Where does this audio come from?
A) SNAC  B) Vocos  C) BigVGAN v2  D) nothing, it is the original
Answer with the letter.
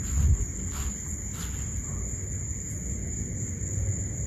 D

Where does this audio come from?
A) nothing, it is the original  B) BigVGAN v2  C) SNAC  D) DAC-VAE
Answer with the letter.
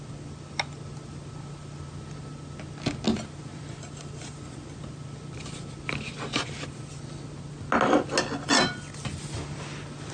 A